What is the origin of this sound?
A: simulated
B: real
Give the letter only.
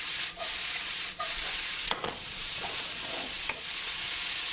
A